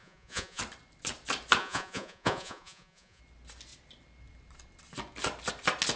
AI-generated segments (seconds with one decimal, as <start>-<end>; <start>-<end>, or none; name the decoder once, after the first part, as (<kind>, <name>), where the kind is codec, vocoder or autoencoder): 0.0-0.6 (vocoder, Vocos); 1.6-3.2